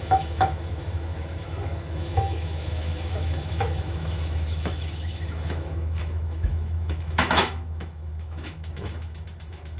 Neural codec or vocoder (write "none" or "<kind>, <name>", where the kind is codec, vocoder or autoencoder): autoencoder, DAC-VAE